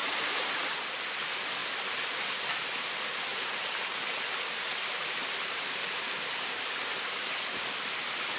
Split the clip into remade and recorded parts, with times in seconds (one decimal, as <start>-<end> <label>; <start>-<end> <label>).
0.0-0.7 remade; 0.7-1.6 recorded; 1.6-2.3 remade; 2.3-3.3 recorded; 3.3-8.4 remade